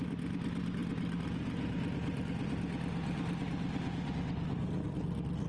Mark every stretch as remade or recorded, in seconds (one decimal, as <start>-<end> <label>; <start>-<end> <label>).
0.0-5.5 recorded